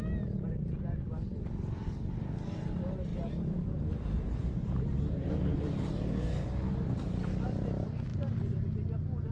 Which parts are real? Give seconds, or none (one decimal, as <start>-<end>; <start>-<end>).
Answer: 0.0-3.1; 7.3-8.1; 8.6-9.3